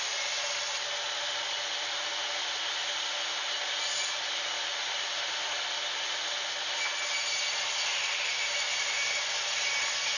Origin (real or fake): real